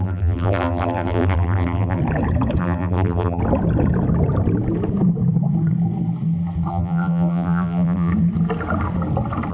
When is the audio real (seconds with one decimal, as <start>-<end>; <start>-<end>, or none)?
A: 2.0-2.6; 3.4-6.7; 8.1-9.5